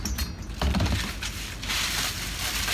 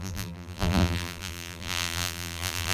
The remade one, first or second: second